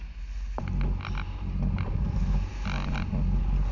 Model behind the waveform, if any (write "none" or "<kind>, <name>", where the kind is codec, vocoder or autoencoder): none